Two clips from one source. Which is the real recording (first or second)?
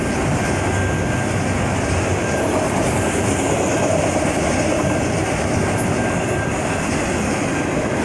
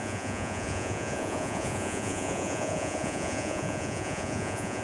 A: first